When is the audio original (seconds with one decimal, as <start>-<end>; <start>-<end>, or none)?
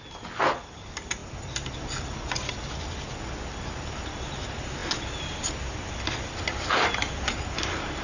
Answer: 0.0-8.0